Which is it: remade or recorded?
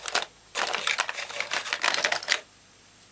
recorded